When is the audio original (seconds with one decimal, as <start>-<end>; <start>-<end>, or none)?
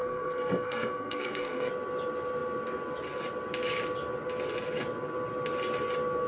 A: 1.7-6.3